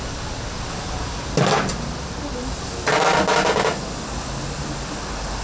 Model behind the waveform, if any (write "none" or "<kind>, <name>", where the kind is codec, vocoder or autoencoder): none